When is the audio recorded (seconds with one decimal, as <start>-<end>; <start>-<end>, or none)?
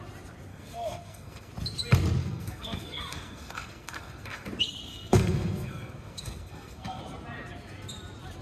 0.0-0.5; 1.5-2.2; 4.5-4.9; 7.0-8.4